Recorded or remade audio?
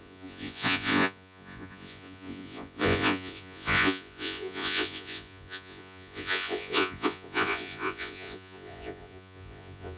remade